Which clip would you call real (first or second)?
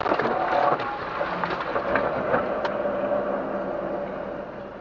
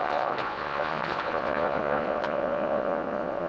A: first